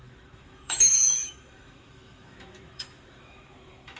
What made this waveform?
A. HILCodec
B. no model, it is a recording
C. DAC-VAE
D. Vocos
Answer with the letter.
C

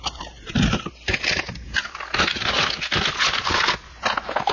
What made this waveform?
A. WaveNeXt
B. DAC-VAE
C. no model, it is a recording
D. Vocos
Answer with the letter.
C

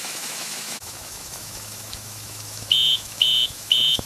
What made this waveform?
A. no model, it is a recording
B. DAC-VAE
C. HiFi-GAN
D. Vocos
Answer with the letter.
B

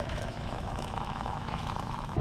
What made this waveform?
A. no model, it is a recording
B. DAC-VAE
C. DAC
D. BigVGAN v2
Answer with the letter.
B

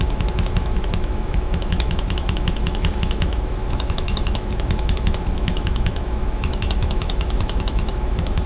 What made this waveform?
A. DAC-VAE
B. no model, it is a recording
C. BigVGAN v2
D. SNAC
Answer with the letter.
A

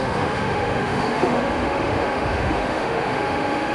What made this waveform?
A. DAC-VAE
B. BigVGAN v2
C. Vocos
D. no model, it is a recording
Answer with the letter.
A